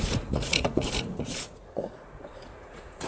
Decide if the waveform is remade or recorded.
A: remade